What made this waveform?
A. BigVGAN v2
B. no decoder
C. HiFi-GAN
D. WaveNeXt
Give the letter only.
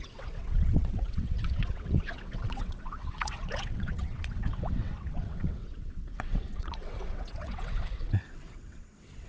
D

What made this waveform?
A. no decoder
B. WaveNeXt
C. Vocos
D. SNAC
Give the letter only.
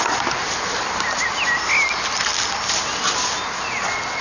A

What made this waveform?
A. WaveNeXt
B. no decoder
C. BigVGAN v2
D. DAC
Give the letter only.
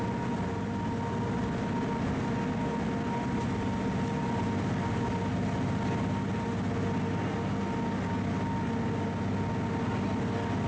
B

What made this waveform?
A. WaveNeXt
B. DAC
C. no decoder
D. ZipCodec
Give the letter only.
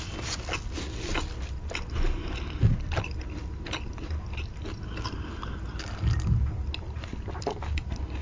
C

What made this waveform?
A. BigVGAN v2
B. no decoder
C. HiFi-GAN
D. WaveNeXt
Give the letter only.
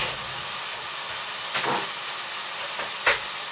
B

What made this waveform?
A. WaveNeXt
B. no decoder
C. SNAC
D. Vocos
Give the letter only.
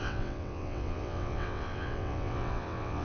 A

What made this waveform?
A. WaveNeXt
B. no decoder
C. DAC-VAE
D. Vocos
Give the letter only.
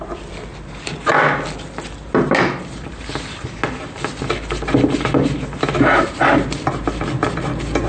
B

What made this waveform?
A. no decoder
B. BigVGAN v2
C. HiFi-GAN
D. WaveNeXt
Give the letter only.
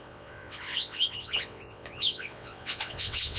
D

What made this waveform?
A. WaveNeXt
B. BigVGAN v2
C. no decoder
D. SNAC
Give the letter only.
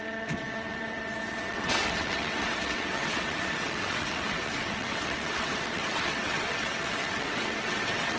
A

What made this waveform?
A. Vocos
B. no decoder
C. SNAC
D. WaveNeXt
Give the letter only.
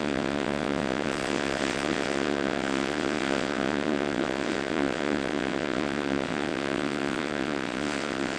D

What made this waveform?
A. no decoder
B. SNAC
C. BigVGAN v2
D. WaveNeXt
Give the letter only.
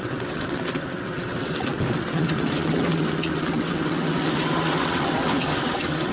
D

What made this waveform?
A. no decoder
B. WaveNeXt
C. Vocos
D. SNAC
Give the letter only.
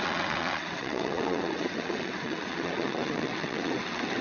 B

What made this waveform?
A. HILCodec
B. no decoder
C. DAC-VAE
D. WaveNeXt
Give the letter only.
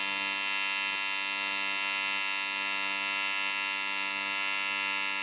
B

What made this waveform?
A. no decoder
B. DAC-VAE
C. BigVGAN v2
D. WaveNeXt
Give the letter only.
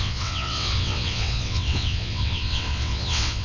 D